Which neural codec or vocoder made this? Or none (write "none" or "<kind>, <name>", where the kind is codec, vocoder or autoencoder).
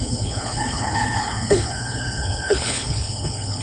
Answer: codec, HILCodec